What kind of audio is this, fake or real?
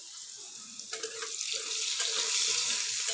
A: real